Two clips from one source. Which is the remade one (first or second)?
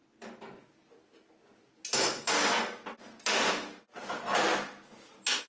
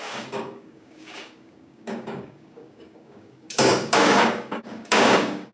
second